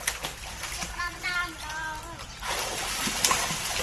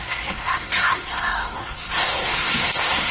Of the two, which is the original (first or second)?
first